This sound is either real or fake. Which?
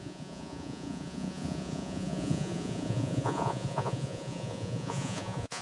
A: fake